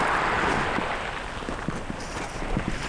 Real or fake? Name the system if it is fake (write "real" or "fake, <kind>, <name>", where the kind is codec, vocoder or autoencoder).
real